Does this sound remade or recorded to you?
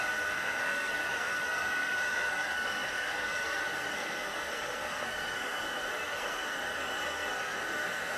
remade